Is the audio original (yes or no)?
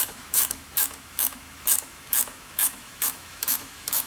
no